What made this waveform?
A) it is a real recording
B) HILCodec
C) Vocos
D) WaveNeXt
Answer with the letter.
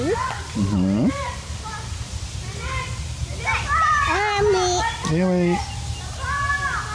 A